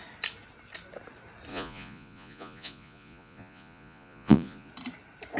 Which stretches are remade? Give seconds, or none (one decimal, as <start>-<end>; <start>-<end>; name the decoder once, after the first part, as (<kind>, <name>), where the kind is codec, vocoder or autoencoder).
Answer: 1.5-4.7 (vocoder, Vocos)